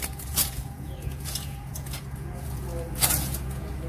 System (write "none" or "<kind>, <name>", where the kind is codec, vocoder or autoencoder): vocoder, Vocos